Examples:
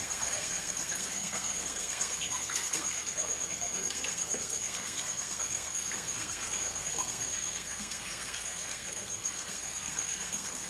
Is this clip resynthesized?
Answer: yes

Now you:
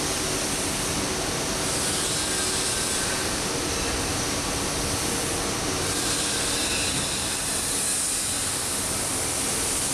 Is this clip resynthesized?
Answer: no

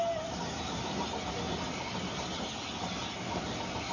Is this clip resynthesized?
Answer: no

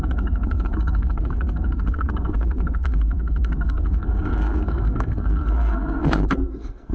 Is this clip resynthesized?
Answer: yes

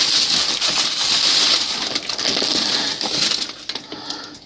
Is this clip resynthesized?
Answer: no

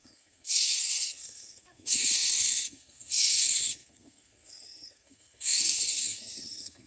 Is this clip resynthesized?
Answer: yes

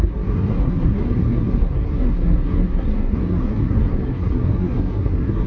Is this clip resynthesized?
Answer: yes